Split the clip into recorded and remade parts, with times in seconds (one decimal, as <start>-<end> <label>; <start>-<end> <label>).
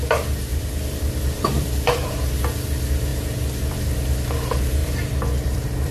0.0-0.5 recorded; 0.5-2.1 remade; 2.1-4.8 recorded; 4.8-5.9 remade